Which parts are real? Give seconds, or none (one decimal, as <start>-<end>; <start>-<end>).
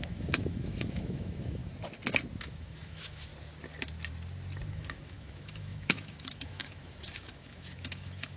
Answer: 1.6-2.4; 3.3-4.7